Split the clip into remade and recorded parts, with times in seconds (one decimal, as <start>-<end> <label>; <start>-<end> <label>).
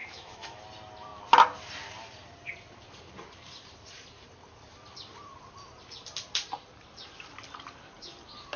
0.0-0.6 remade; 0.6-8.6 recorded